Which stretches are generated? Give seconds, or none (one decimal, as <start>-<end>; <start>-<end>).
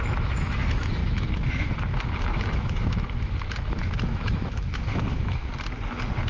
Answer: 0.0-5.5